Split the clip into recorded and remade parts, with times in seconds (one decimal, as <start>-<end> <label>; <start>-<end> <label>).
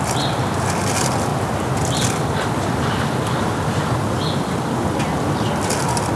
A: 0.0-6.2 recorded